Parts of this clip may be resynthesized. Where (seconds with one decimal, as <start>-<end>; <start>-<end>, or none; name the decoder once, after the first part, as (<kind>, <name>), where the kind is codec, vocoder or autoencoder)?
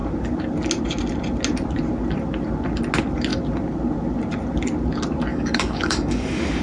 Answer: 5.3-6.6 (codec, DAC)